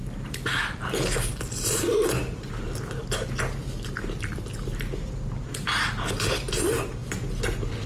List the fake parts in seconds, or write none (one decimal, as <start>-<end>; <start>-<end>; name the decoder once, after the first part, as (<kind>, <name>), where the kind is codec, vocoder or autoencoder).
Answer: none

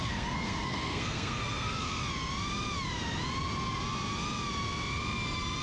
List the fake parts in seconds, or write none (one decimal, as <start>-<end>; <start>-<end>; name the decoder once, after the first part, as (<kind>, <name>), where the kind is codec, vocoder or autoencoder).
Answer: 0.0-2.0 (codec, SNAC)

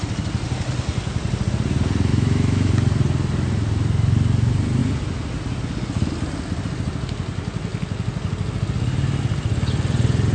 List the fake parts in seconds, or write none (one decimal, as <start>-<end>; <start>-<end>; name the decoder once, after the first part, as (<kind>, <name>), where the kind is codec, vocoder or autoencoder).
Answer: 2.1-2.7 (autoencoder, DAC-VAE)

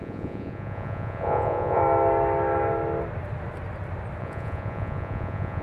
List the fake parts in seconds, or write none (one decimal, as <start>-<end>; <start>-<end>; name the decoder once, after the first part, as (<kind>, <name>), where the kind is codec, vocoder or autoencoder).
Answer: 0.0-1.8 (vocoder, Vocos); 4.2-5.6

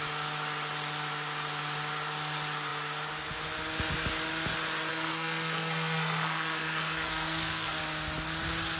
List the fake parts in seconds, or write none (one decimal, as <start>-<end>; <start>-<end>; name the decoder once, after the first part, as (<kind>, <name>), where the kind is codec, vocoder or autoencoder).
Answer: 4.9-7.8 (codec, SNAC)

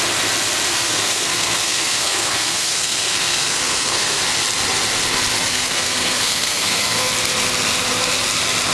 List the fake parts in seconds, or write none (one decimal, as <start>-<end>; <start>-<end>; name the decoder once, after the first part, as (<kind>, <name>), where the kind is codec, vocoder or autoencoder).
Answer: 0.7-4.2 (codec, SNAC); 5.5-7.1

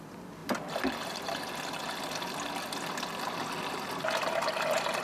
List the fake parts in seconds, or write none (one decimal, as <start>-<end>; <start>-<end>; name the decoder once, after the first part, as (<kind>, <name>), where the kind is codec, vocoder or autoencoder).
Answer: none

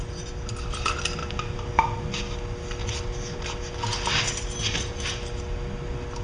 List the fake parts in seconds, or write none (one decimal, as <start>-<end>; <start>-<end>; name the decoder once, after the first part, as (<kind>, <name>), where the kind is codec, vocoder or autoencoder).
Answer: none